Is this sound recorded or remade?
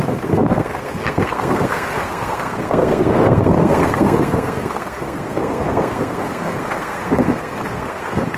remade